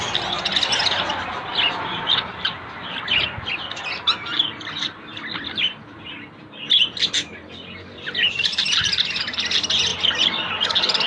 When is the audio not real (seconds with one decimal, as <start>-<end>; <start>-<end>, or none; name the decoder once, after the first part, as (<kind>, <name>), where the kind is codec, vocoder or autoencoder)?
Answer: none